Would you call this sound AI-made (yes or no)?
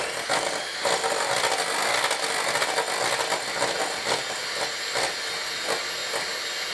no